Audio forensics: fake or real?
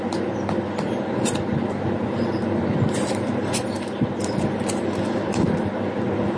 fake